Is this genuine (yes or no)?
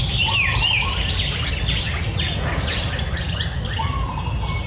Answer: yes